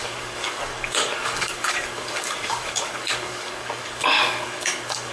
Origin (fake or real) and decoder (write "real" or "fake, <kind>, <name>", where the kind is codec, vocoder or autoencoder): fake, codec, DAC